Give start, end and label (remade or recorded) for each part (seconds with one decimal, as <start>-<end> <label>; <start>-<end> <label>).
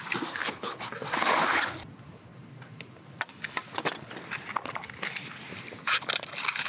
0.0-0.4 recorded; 0.4-0.9 remade; 0.9-6.7 recorded